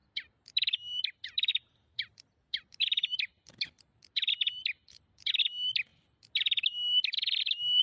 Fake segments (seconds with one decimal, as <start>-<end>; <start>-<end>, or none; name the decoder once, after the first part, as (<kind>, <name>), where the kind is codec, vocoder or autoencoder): 0.0-1.0 (vocoder, BigVGAN v2); 1.5-4.3; 5.9-7.8